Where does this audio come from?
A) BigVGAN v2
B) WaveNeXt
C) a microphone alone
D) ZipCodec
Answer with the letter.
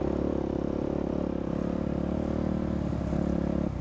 C